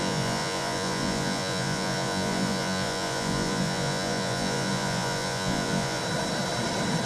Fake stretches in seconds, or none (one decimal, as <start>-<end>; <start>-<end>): 0.0-6.0